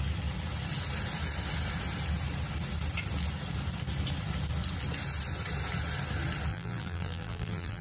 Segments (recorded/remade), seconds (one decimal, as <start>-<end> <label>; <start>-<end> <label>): 0.0-6.5 recorded; 6.5-7.8 remade